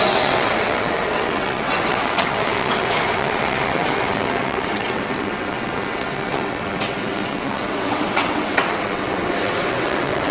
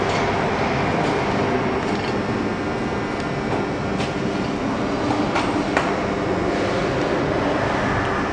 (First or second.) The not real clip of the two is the first